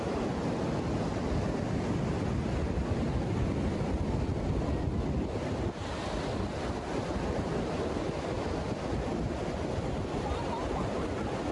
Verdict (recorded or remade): recorded